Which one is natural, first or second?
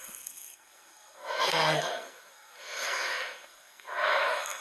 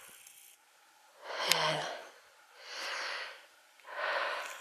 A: second